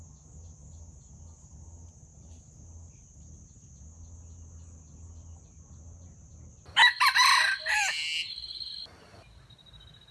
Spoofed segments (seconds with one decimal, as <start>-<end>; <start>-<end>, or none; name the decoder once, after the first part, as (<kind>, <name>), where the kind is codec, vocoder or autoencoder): none